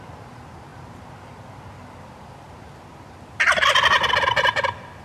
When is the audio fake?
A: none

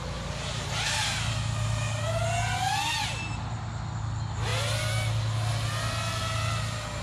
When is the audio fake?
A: none

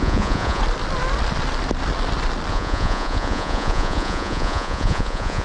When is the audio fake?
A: 0.0-0.6 (vocoder, Vocos); 2.5-5.4

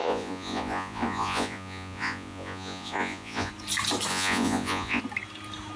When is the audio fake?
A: 0.0-3.5 (vocoder, Vocos); 4.1-5.0

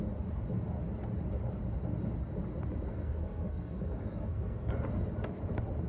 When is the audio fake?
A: 2.9-4.7 (codec, SNAC)

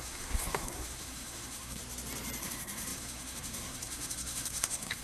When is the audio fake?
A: 0.0-1.8 (codec, SNAC); 2.4-5.0